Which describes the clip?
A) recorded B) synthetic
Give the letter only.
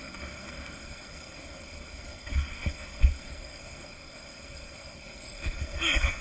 B